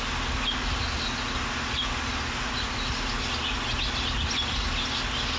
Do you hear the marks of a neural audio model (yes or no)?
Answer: no